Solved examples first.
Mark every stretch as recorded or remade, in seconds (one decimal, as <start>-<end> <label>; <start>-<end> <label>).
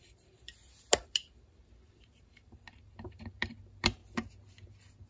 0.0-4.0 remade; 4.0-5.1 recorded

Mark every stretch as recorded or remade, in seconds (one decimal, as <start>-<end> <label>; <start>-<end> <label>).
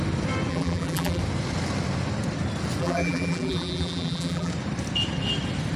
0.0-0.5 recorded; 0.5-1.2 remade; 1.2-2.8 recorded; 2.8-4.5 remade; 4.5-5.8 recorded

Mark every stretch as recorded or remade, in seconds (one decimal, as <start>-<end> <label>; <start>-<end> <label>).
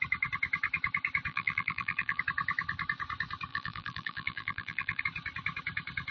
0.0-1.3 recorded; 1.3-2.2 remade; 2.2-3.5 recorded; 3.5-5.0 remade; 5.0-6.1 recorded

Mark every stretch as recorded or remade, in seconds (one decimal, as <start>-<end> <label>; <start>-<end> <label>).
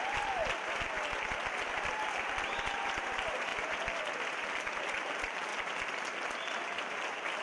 0.0-0.4 remade; 0.4-1.7 recorded; 1.7-3.5 remade; 3.5-4.0 recorded; 4.0-5.5 remade; 5.5-6.8 recorded; 6.8-7.4 remade